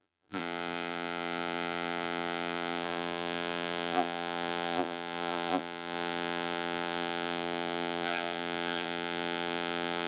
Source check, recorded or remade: remade